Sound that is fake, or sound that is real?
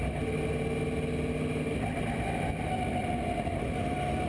real